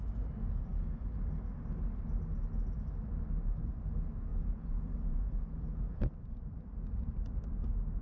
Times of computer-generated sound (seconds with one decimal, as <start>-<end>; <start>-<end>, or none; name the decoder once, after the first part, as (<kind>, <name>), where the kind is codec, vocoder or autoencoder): 4.3-6.0 (vocoder, Vocos)